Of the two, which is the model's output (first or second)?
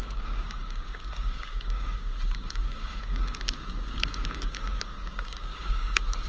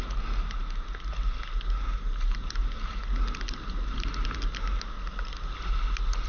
first